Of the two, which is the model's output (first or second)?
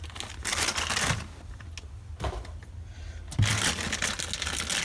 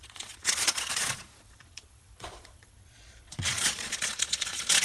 second